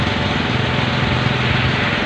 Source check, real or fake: real